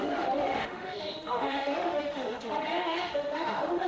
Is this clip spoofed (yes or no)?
yes